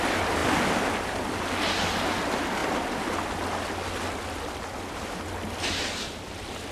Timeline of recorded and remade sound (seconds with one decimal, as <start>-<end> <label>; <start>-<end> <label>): 0.0-6.7 recorded